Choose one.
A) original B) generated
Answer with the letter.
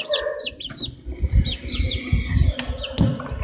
A